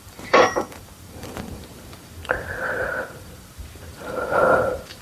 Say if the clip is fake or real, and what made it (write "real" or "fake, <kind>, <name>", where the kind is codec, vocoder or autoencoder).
fake, vocoder, BigVGAN v2